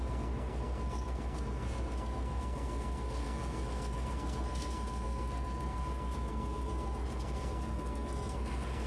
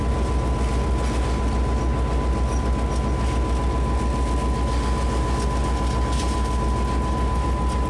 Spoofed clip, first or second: first